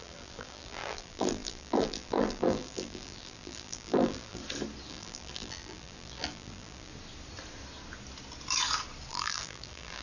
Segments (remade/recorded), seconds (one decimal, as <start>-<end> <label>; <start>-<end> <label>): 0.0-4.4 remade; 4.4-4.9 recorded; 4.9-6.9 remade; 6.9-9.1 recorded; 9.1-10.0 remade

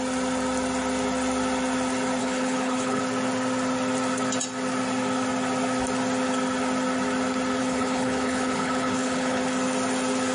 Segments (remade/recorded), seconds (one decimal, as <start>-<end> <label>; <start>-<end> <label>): 0.0-2.2 recorded; 2.2-3.0 remade; 3.0-7.6 recorded; 7.6-9.4 remade; 9.4-10.3 recorded

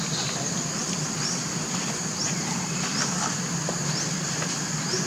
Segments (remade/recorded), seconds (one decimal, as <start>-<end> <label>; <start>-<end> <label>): 0.0-5.1 recorded

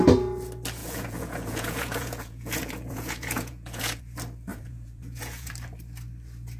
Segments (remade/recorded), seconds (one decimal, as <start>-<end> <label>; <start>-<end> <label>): 0.0-0.8 recorded; 0.8-4.0 remade; 4.0-4.5 recorded; 4.5-5.5 remade; 5.5-6.6 recorded